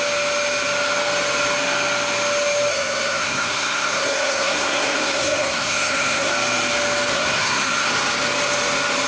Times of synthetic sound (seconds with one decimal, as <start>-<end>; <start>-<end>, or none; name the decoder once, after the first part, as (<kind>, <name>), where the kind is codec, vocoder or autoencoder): 2.7-6.3 (codec, SNAC); 7.1-7.9